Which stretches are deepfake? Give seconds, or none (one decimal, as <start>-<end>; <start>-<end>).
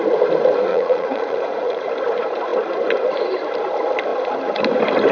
0.7-1.9